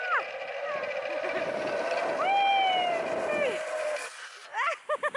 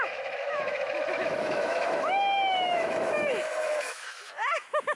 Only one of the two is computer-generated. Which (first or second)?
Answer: second